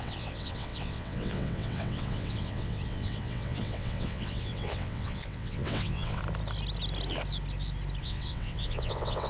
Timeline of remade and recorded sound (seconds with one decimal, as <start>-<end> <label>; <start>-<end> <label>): 0.0-6.2 remade; 6.2-8.0 recorded; 8.0-9.3 remade